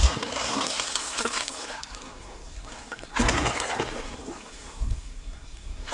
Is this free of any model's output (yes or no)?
no